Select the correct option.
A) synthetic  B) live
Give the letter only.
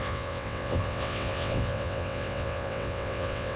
A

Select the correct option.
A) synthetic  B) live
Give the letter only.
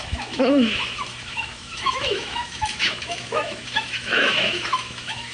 A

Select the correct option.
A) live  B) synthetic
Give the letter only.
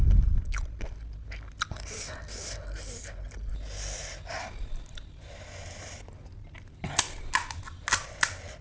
A